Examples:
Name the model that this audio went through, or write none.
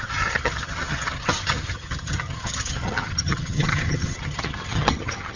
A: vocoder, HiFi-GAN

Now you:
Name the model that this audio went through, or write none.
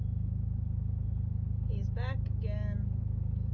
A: none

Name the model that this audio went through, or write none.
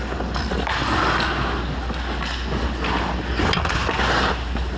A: none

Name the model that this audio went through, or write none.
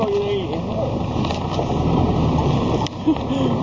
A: none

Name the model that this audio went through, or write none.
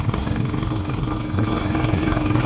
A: codec, SNAC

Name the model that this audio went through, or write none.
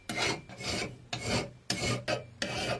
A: none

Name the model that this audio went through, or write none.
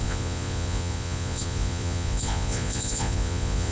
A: vocoder, Vocos